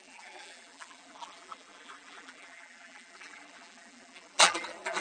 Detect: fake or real fake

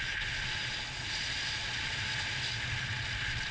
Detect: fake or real real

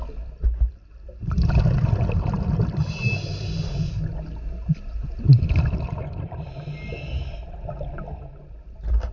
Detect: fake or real real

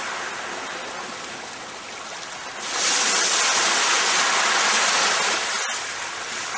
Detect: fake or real real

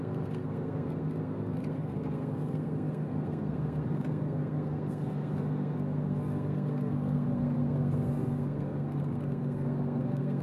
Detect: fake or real fake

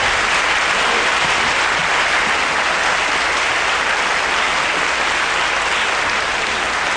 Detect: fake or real real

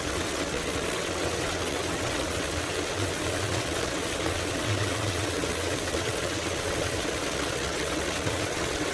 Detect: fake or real fake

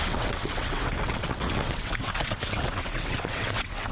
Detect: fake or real fake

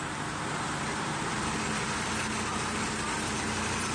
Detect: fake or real real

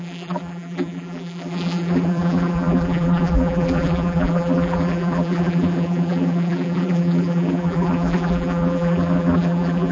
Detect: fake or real fake